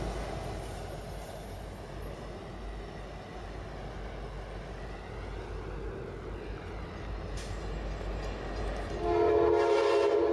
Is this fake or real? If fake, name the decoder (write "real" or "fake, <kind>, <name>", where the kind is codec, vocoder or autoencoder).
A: real